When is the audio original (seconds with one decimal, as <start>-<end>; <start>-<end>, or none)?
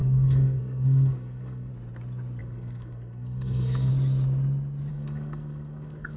1.7-2.4; 3.9-4.9